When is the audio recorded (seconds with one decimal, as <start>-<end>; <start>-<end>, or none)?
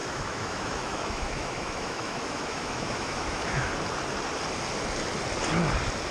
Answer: 3.7-6.1